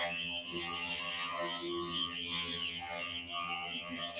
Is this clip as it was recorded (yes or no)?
no